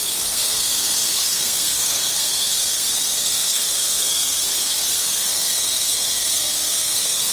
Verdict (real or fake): fake